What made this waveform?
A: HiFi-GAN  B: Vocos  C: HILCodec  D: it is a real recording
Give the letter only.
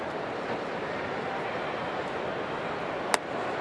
D